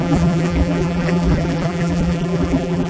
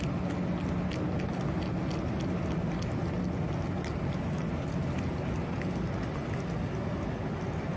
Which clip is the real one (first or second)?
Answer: second